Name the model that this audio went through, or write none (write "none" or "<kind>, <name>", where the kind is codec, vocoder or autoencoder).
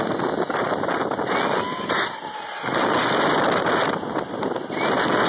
none